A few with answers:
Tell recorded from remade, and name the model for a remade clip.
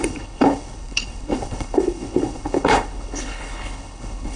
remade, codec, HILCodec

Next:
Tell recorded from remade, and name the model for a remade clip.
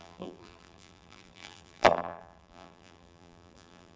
remade, vocoder, BigVGAN v2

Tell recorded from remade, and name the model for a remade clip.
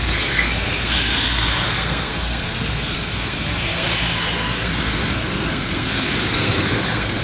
remade, codec, SNAC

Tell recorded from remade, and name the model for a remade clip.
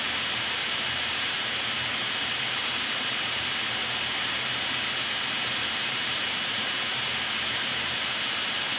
recorded